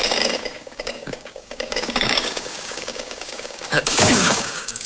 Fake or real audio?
fake